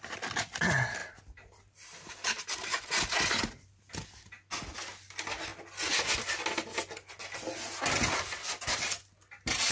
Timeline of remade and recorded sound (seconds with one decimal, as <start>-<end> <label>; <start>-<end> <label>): 0.0-9.7 recorded